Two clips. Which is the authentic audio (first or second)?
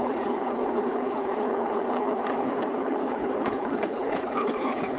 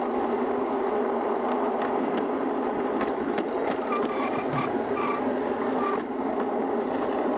second